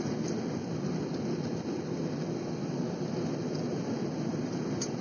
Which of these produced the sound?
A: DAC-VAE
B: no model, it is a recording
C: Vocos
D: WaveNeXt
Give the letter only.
B